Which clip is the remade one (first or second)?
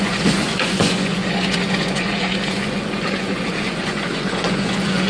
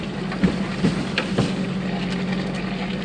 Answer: first